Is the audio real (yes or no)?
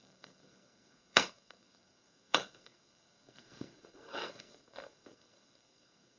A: no